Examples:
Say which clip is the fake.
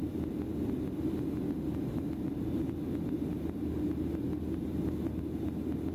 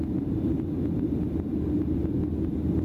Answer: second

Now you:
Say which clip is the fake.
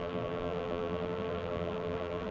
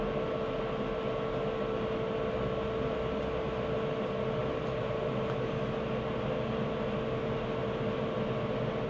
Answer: first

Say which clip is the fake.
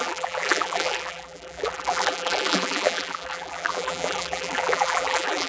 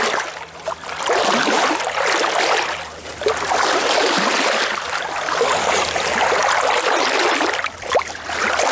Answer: first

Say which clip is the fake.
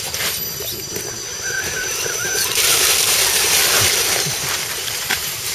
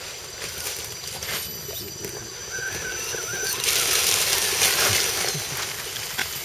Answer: first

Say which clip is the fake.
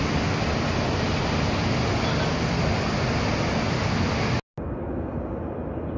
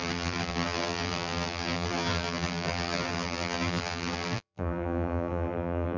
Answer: second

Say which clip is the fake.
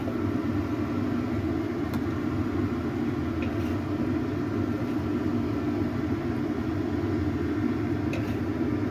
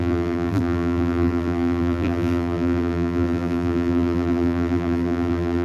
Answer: second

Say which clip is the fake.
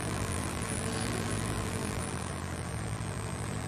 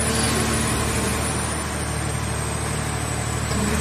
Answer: first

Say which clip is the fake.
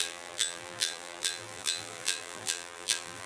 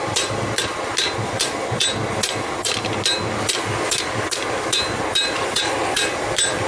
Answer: first